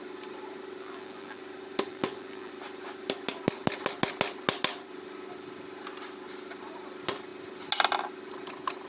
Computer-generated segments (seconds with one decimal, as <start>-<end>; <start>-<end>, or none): 0.8-1.4; 1.9-2.5